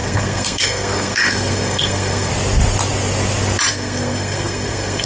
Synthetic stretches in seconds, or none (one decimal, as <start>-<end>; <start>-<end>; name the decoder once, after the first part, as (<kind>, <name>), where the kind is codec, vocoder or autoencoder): 0.0-2.3 (codec, SNAC); 3.7-5.1